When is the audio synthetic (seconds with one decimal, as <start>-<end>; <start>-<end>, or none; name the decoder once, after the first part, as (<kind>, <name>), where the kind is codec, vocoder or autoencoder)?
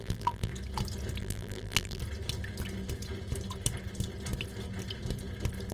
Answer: 0.0-0.5 (vocoder, BigVGAN v2); 1.2-2.0